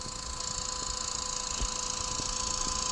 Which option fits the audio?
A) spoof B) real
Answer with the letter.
B